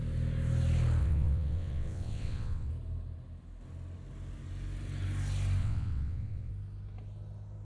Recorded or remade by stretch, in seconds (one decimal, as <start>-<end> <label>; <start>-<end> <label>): 0.0-1.0 recorded; 1.0-2.7 remade; 2.7-5.6 recorded; 5.6-6.5 remade; 6.5-7.6 recorded